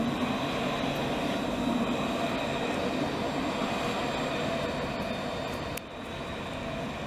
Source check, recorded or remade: recorded